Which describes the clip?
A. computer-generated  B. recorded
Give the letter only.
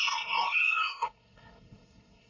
A